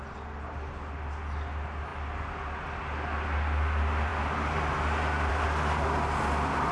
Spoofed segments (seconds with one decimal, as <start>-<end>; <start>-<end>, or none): none